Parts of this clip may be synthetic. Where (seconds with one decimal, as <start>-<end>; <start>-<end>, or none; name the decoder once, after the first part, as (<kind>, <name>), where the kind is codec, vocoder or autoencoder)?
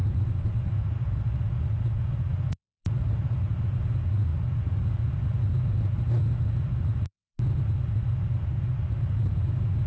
0.0-1.2 (vocoder, BigVGAN v2); 2.3-3.4